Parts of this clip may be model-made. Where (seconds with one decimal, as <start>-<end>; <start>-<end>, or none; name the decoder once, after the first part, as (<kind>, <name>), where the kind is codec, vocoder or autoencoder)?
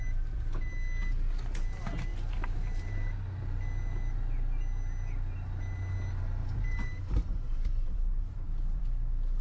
2.1-3.1 (vocoder, BigVGAN v2); 6.4-8.8